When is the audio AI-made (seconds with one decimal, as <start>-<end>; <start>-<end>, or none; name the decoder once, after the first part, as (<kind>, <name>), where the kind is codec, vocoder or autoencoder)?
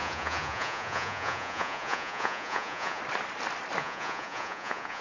0.0-3.0 (vocoder, Vocos); 3.8-5.0